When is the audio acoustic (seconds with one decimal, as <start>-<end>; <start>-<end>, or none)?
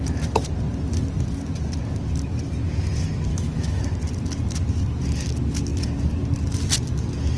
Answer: 0.0-3.3; 3.8-7.4